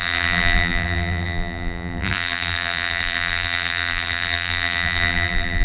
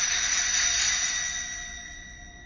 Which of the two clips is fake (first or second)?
first